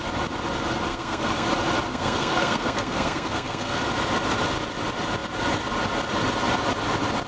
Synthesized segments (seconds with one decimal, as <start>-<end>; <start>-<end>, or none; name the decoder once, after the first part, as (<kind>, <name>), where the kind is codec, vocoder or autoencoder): 0.9-1.5 (codec, SNAC); 1.9-3.8